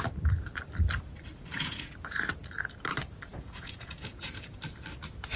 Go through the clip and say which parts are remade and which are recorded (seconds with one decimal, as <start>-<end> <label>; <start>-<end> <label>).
0.0-1.3 recorded; 1.3-1.9 remade; 1.9-3.3 recorded; 3.3-4.6 remade; 4.6-5.4 recorded